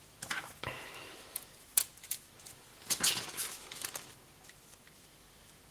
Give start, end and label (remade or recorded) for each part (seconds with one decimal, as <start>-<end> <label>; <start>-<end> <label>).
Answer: 0.0-5.7 remade